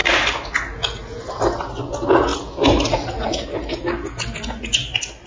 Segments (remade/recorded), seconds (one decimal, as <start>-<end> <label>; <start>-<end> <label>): 0.0-0.5 remade; 0.5-2.3 recorded; 2.3-3.7 remade; 3.7-5.3 recorded